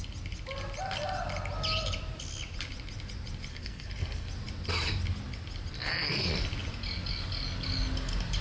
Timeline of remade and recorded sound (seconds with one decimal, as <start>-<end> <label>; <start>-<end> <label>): 0.0-3.5 recorded; 3.5-4.3 remade; 4.3-8.4 recorded

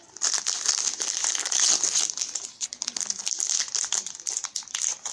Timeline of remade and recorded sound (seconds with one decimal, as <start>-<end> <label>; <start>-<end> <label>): 0.0-5.1 recorded

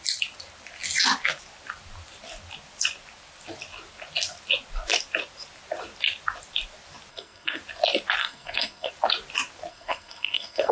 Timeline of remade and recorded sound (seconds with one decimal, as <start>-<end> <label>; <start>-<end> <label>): 0.0-7.1 recorded; 7.1-7.6 remade; 7.6-8.2 recorded; 8.2-8.9 remade; 8.9-9.7 recorded; 9.7-10.7 remade

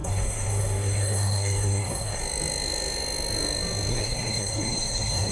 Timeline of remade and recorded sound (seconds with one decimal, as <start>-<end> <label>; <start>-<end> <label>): 0.0-2.2 remade; 2.2-3.9 recorded; 3.9-5.3 remade

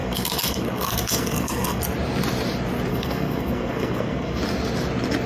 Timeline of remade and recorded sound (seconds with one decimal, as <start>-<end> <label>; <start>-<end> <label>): 0.0-1.8 remade; 1.8-2.9 recorded; 2.9-4.4 remade; 4.4-5.3 recorded

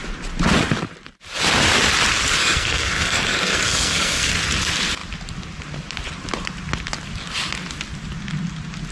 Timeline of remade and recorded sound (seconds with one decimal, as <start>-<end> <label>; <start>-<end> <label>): 0.0-2.4 recorded; 2.4-4.3 remade; 4.3-8.9 recorded

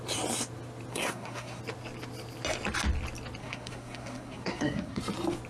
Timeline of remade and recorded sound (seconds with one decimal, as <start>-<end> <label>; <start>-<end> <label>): 0.0-0.9 recorded; 0.9-1.6 remade; 1.6-3.4 recorded; 3.4-5.0 remade; 5.0-5.5 recorded

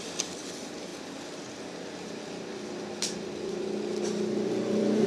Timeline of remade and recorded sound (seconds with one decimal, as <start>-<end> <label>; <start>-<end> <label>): 0.0-5.1 recorded